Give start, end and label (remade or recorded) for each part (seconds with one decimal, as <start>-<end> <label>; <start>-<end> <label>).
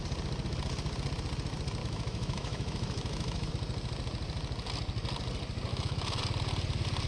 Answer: 0.0-1.8 recorded; 1.8-3.5 remade; 3.5-5.7 recorded; 5.7-6.2 remade; 6.2-7.1 recorded